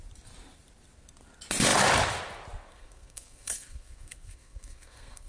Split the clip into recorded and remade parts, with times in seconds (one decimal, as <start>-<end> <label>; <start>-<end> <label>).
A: 0.0-2.7 recorded; 2.7-5.3 remade